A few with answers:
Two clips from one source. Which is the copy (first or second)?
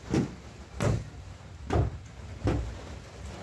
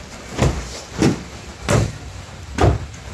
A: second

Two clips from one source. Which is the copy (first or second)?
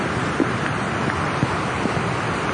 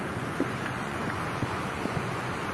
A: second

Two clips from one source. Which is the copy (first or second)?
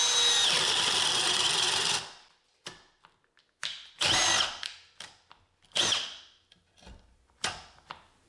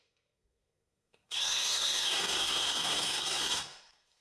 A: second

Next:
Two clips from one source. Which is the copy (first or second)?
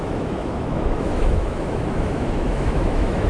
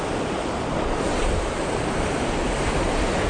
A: first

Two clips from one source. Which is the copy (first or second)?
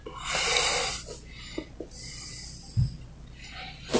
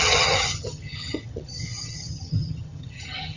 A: second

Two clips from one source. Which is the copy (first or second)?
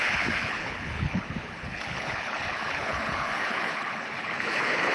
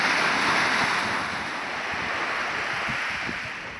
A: first